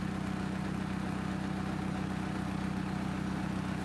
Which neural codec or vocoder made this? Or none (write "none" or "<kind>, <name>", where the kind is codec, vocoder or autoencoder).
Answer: none